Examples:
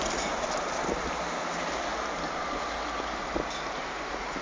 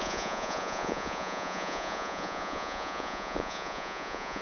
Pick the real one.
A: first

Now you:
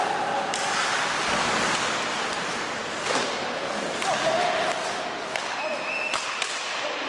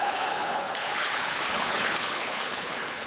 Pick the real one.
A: first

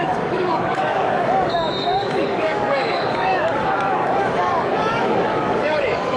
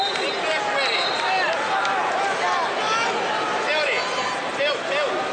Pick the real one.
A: second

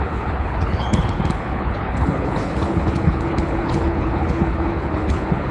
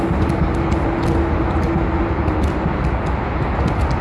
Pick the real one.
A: second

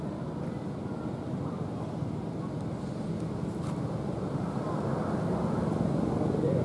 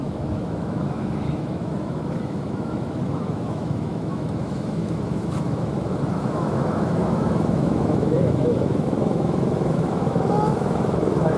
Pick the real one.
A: first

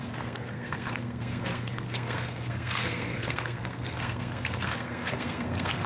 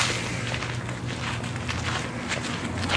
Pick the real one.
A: second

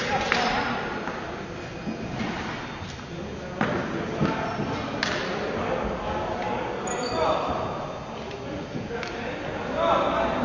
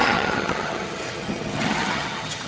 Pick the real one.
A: first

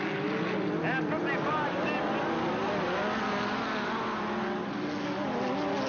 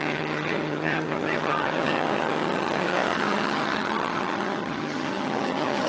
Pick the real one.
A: first